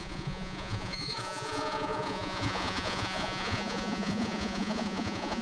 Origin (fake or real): fake